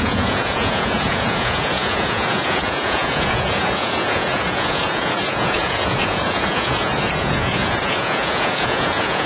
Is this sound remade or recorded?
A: remade